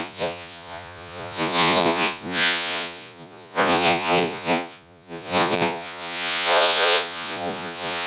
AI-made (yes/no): yes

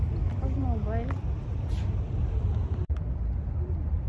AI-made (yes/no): no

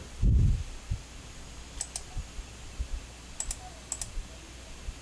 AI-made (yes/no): no